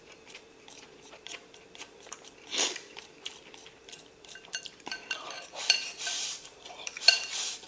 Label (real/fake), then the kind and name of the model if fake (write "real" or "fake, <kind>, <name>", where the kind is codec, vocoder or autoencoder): fake, vocoder, BigVGAN v2